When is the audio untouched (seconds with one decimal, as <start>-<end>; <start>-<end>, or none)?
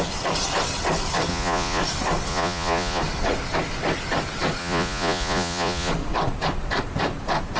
0.0-1.3; 1.8-2.3; 3.0-4.6; 5.9-7.6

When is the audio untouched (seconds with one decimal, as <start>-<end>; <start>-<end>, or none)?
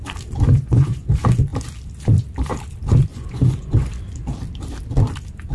0.0-0.5; 1.1-3.1; 3.9-5.5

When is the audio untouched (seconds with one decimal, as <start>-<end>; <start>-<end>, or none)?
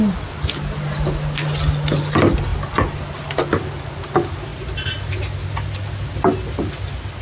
0.0-4.5; 5.2-7.2